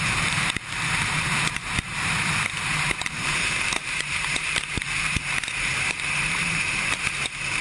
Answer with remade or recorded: remade